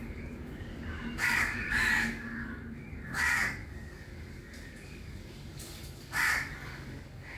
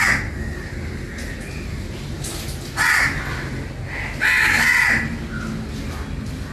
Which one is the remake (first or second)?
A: first